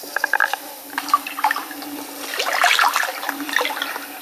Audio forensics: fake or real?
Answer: real